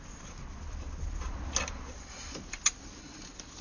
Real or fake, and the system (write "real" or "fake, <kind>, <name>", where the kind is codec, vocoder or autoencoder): real